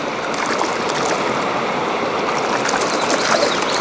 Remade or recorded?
recorded